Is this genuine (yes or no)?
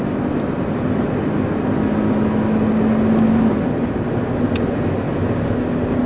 yes